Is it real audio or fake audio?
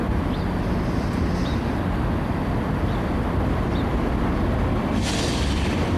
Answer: real